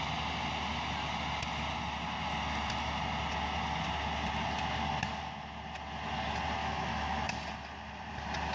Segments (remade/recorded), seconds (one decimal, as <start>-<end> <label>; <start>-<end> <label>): 0.0-6.6 recorded; 6.6-7.3 remade; 7.3-8.5 recorded